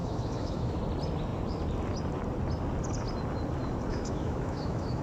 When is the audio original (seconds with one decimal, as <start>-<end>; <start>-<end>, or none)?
0.8-3.9